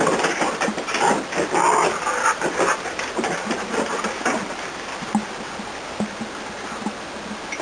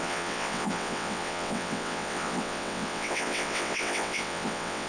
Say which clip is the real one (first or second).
first